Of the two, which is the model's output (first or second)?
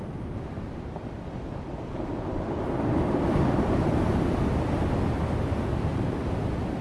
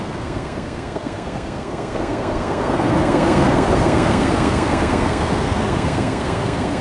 second